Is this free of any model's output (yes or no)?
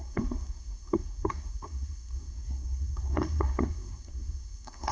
no